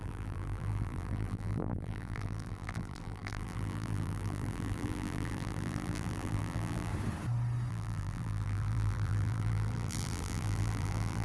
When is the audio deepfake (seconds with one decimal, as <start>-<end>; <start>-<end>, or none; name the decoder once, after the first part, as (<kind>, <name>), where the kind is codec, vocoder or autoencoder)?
0.0-6.9 (vocoder, BigVGAN v2); 7.7-11.2